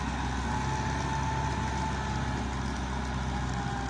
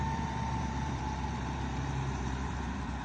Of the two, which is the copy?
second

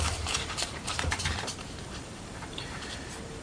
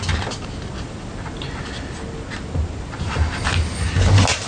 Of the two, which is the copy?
first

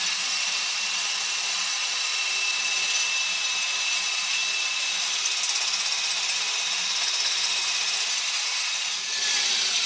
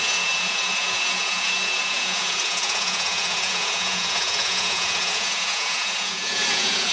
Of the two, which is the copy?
second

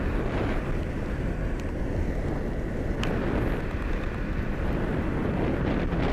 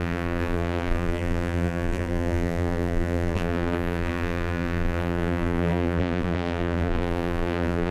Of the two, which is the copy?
second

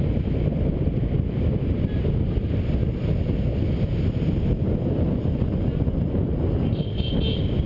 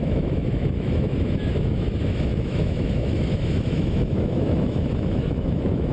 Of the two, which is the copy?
second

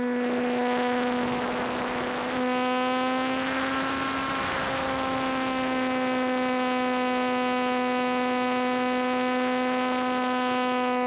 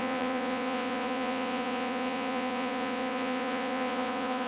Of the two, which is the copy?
second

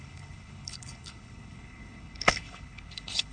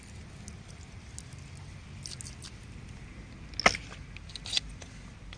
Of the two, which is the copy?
first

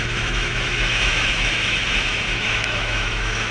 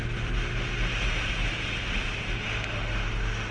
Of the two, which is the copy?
first